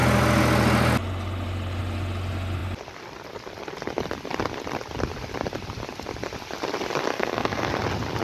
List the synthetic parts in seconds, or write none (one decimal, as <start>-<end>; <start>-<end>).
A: 7.1-7.7